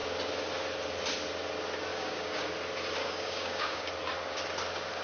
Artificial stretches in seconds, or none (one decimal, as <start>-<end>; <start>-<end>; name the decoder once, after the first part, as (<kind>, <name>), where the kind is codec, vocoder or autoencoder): 1.9-2.5 (codec, DAC); 3.0-3.9